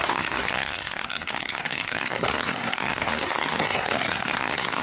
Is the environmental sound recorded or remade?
remade